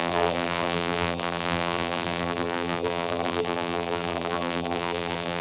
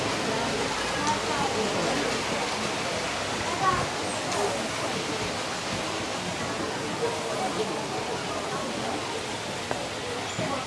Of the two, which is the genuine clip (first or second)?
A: second